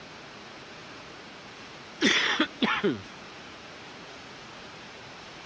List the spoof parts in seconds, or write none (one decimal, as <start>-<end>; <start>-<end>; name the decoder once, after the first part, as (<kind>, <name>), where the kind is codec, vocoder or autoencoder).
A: 0.0-5.5 (vocoder, Vocos)